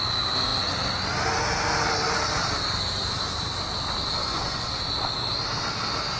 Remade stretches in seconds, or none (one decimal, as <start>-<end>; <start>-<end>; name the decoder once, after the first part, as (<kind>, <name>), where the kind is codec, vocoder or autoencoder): 4.2-4.7 (vocoder, Vocos)

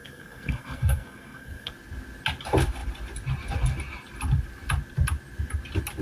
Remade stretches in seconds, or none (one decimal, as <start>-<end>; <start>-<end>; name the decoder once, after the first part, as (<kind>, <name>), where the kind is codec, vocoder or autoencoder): 0.0-1.7 (codec, SNAC)